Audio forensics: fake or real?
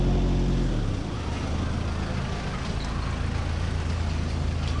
real